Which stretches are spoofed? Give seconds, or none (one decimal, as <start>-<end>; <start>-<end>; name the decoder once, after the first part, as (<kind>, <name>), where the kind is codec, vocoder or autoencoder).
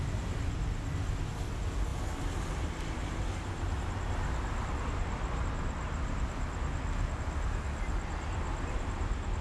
none